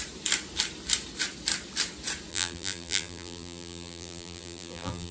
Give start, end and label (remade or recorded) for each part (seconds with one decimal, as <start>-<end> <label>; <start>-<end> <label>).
0.0-2.3 recorded; 2.3-5.1 remade